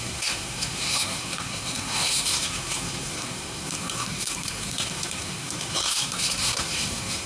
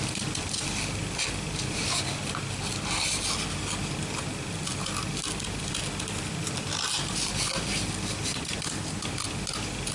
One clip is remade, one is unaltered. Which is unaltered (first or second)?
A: second